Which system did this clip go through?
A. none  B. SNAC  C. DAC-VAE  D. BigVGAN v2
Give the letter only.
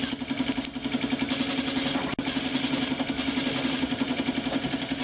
A